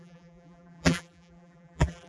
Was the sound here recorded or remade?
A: remade